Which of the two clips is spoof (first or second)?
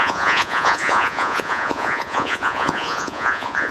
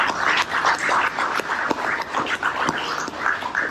first